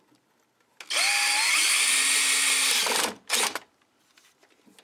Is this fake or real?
real